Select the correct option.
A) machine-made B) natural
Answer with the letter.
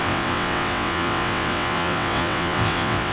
A